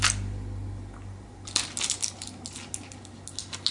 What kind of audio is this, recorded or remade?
recorded